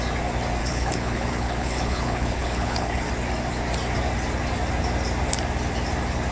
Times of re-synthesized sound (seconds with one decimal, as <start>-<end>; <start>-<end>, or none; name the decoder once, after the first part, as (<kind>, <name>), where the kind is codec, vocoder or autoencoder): 0.6-3.1 (codec, HILCodec)